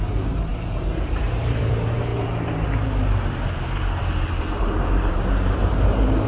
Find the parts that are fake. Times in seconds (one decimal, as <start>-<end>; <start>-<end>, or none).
0.0-6.3